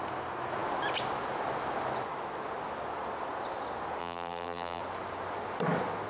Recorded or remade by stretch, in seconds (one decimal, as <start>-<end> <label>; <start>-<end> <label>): 0.0-4.0 recorded; 4.0-4.8 remade; 4.8-6.1 recorded